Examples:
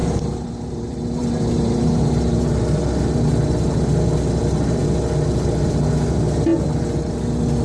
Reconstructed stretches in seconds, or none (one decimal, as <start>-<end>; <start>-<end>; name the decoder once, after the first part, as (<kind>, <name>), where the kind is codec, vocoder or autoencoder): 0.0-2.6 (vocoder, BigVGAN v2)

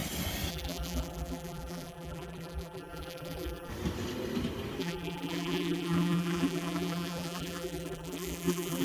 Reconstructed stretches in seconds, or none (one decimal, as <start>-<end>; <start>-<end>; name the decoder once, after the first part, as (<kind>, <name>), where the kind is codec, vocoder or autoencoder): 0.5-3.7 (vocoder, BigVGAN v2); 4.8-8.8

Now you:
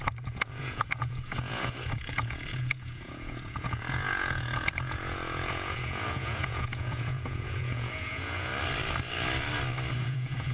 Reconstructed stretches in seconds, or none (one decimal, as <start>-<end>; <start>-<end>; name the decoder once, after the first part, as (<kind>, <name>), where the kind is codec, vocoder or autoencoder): 0.0-8.5 (vocoder, Vocos); 10.0-10.5

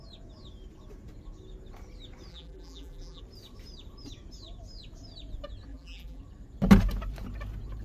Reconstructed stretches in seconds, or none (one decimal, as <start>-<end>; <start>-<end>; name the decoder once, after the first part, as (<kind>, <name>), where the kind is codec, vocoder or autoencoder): 2.3-3.2 (vocoder, BigVGAN v2); 5.7-6.2